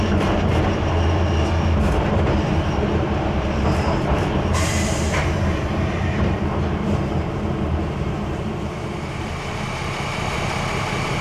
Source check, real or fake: fake